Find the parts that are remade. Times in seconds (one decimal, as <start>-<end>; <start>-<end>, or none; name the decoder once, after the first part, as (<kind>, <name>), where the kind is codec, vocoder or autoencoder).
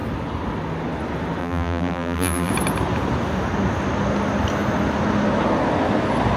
1.4-2.5 (vocoder, BigVGAN v2)